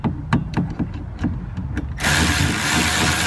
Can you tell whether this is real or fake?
real